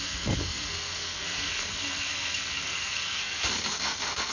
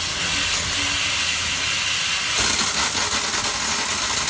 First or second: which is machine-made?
first